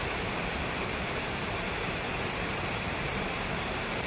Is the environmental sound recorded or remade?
remade